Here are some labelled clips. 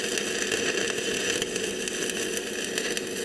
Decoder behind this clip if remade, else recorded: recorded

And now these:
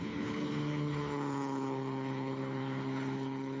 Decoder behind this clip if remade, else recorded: remade, codec, HILCodec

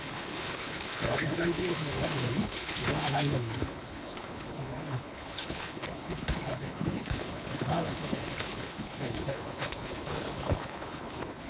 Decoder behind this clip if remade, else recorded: remade, codec, HILCodec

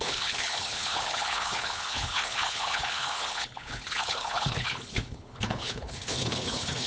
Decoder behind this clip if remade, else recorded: remade, codec, HILCodec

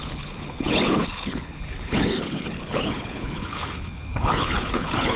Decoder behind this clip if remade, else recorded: remade, codec, HILCodec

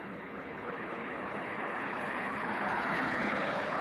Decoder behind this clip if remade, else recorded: remade, codec, HILCodec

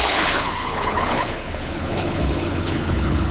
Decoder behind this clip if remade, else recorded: remade, codec, HILCodec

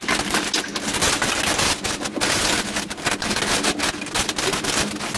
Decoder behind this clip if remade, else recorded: recorded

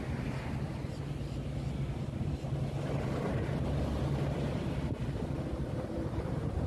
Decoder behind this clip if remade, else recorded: recorded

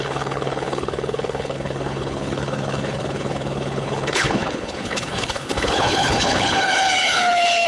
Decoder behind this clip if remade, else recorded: remade, codec, HILCodec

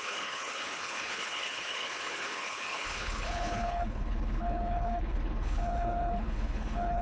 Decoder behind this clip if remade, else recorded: remade, codec, HILCodec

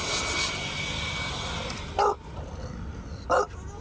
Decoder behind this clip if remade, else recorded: recorded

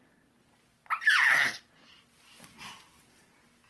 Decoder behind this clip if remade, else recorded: recorded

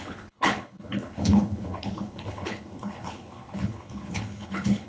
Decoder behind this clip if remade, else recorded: remade, codec, HILCodec